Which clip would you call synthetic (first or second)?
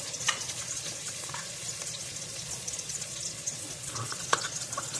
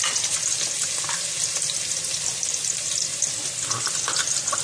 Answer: first